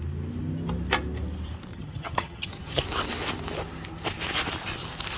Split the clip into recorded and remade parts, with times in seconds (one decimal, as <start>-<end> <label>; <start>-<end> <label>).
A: 0.0-1.7 recorded; 1.7-2.8 remade; 2.8-5.2 recorded